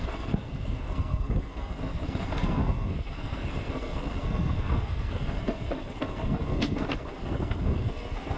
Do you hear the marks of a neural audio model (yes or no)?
yes